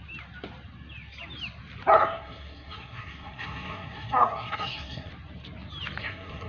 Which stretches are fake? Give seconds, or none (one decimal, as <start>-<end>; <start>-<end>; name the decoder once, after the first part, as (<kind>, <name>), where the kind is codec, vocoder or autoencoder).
2.0-5.1 (codec, SNAC); 6.0-6.5